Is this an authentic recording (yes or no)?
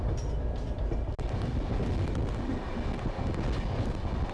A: yes